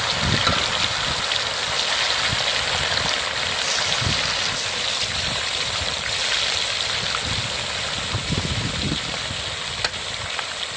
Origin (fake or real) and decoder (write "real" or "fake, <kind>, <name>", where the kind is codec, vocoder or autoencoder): real